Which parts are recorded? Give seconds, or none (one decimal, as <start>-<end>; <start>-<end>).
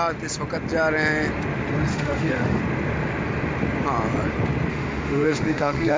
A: 0.0-1.9; 2.6-4.7